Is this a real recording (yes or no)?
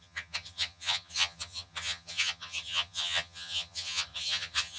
no